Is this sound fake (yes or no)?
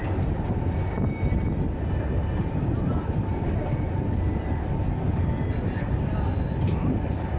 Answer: no